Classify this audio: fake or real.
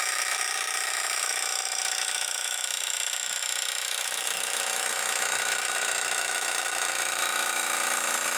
fake